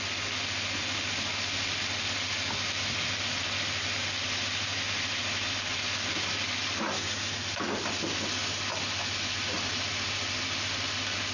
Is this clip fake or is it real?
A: real